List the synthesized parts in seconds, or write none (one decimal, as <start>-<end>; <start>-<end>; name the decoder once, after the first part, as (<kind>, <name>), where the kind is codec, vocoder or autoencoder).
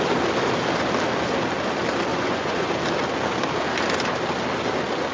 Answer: 2.1-2.7 (vocoder, Vocos)